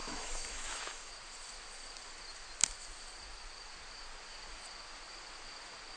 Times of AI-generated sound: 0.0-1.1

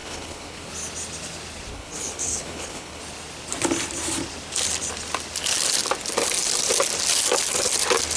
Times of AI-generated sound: 0.0-0.7; 1.7-3.0